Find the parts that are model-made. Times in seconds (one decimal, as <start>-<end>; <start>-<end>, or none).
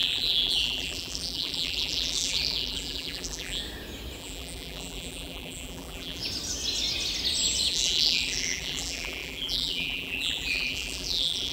0.0-3.6; 4.2-6.2; 7.7-11.5